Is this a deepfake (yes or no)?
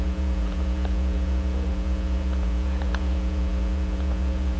yes